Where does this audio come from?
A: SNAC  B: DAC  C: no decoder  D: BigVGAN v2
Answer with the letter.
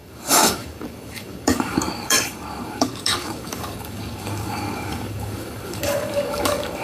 B